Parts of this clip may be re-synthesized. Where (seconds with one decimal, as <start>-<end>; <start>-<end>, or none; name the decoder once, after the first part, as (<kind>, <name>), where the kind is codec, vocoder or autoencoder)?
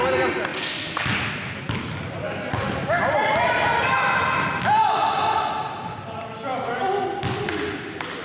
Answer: none